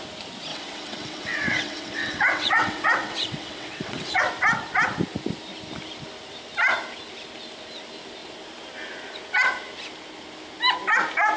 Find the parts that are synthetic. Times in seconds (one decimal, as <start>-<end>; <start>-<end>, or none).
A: 0.5-4.2